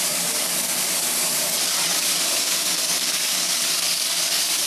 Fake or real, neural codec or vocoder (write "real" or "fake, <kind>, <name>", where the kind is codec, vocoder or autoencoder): fake, codec, DAC